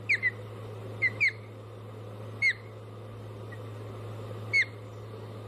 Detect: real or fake real